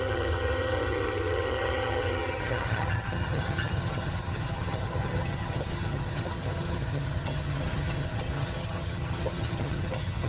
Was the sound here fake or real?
fake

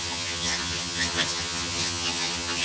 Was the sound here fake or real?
fake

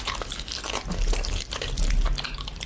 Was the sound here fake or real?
real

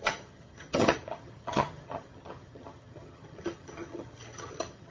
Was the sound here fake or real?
fake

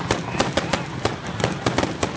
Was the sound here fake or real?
real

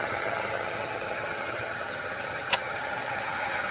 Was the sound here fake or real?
fake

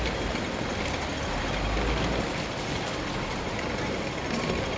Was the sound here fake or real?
real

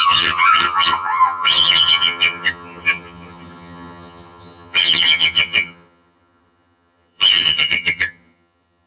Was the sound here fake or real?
fake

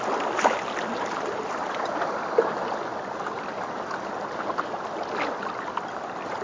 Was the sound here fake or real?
real